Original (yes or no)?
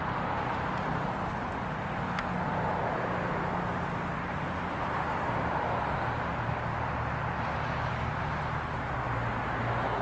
yes